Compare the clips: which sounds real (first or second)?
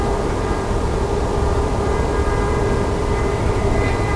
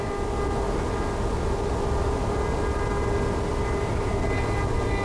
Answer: second